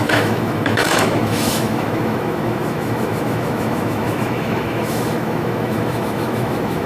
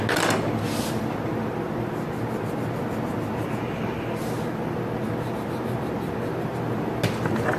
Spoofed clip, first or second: first